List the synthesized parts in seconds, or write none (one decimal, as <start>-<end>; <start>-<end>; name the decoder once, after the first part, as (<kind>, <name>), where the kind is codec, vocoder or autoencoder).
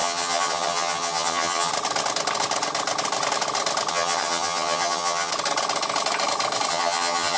0.0-1.7 (vocoder, HiFi-GAN); 3.9-5.3; 6.7-7.4